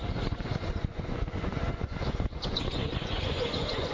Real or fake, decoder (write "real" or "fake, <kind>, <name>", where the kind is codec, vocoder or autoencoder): fake, vocoder, Vocos